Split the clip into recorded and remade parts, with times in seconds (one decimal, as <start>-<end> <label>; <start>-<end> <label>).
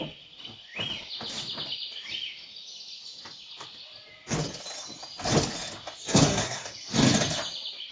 0.0-6.0 recorded; 6.0-6.7 remade; 6.7-7.9 recorded